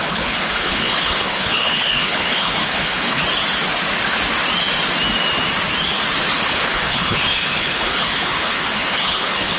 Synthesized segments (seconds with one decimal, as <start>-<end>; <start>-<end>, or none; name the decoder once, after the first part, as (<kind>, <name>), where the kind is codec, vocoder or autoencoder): 0.0-3.2 (codec, HILCodec); 6.3-9.6